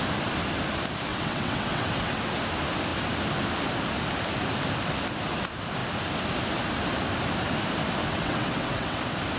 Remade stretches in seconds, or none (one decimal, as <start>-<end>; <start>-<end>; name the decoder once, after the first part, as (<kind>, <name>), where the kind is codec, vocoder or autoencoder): 1.1-2.2 (vocoder, WaveNeXt); 8.0-9.0

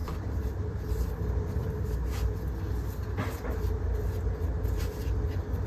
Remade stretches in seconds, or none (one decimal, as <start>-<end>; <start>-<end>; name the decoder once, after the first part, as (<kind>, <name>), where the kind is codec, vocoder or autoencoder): 0.0-1.1 (vocoder, BigVGAN v2)

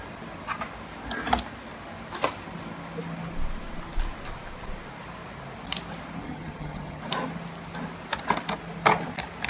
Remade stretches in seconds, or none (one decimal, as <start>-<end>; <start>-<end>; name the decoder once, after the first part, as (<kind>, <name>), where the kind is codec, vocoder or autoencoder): 6.2-7.0 (vocoder, HiFi-GAN)

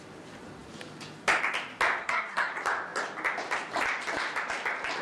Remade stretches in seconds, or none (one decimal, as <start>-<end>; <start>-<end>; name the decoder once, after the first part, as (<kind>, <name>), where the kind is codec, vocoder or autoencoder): 2.0-2.5 (codec, SNAC)

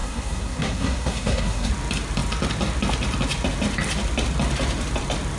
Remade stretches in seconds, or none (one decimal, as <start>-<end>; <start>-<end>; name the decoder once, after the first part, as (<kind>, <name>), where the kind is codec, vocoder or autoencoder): 0.0-1.7 (codec, SNAC)

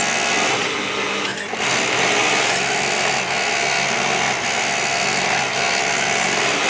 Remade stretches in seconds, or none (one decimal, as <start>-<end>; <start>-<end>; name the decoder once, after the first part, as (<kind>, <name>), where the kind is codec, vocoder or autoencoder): none

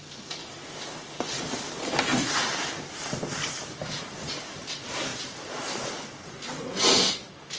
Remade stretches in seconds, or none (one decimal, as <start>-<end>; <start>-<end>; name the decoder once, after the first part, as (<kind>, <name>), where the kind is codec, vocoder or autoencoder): 0.0-5.1 (vocoder, BigVGAN v2); 7.1-7.6

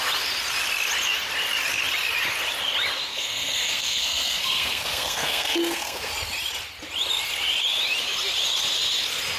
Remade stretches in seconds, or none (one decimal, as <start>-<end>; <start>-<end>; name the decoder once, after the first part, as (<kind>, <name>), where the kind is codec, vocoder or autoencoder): 3.1-6.1 (codec, SNAC)